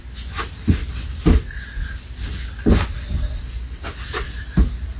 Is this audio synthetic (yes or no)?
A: no